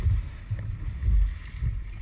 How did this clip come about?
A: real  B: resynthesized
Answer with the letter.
A